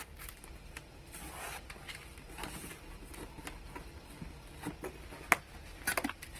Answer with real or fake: real